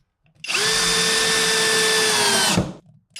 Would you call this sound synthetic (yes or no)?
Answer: no